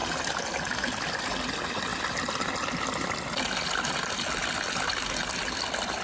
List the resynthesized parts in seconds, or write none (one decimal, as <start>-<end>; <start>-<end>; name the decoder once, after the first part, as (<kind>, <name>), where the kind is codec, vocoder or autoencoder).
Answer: none